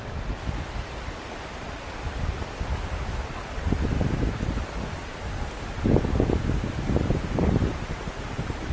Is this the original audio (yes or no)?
yes